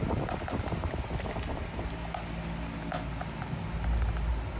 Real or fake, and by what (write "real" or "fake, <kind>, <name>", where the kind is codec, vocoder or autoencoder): real